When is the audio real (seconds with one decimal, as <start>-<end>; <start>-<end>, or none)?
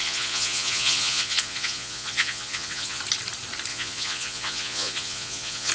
3.0-3.7